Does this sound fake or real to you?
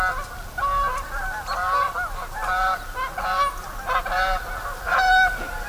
real